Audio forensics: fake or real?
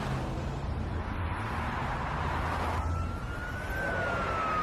real